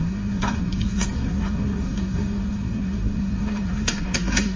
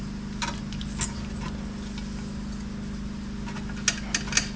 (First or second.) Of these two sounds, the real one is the second